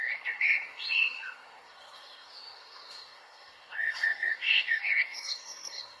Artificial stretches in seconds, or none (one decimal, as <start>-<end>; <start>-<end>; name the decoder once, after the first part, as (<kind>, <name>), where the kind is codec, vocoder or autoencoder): 0.0-6.0 (codec, SNAC)